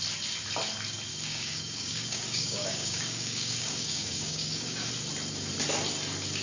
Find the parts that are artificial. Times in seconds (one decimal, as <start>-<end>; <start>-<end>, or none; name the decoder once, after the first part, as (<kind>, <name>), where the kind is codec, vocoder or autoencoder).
1.1-4.9 (codec, DAC)